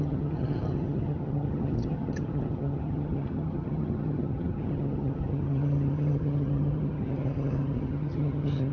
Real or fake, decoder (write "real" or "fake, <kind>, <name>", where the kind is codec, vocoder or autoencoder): fake, vocoder, HiFi-GAN